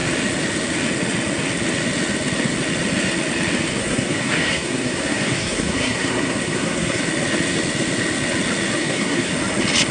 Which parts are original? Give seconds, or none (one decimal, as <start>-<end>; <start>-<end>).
0.0-3.8; 7.0-8.8; 9.3-9.9